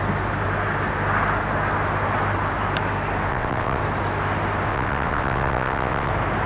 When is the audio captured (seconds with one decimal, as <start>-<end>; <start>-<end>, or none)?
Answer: 0.0-3.3; 3.8-4.7; 6.1-6.5